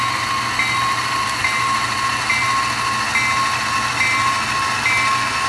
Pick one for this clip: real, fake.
real